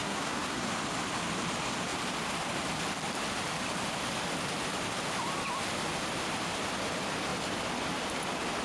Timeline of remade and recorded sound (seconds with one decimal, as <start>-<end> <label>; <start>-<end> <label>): 0.0-0.7 remade; 0.7-8.6 recorded